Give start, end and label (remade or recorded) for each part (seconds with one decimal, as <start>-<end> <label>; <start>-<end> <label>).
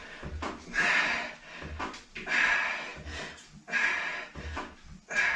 0.0-5.4 recorded